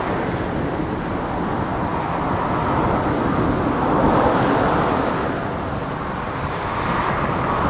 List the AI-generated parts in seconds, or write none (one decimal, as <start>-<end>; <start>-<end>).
none